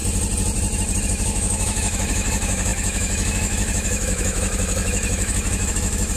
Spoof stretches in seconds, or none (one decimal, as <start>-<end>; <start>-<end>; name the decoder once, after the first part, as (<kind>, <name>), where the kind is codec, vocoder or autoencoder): 1.0-6.2 (autoencoder, DAC-VAE)